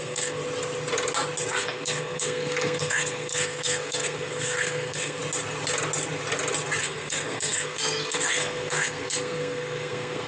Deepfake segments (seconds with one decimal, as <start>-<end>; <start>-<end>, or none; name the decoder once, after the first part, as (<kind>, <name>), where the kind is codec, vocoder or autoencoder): 0.0-0.4 (codec, SNAC); 1.5-5.2; 6.8-10.3